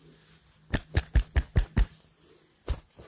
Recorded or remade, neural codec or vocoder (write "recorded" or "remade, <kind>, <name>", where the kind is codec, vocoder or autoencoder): recorded